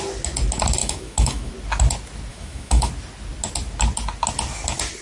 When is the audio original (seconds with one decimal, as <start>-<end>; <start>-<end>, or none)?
0.0-0.8; 1.5-2.3; 2.9-5.0